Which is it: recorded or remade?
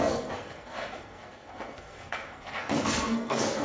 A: remade